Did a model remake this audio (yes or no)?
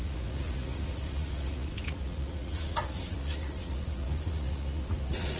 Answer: yes